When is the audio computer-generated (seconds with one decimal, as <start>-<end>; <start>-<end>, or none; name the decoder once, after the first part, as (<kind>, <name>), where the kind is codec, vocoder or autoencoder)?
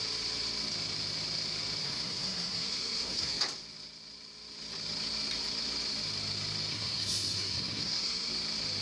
1.8-3.4 (codec, SNAC); 6.7-8.3